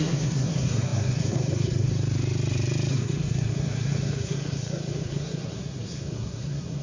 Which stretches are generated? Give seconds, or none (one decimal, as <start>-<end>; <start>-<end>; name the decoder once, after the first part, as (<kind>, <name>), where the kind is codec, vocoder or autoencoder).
0.0-1.9 (codec, SNAC); 2.9-6.8